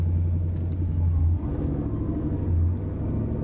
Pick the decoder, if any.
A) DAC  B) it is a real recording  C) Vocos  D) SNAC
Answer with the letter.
B